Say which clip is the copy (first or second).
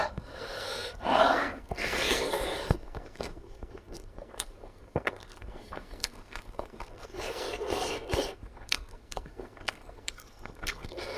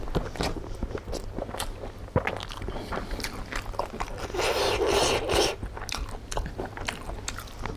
first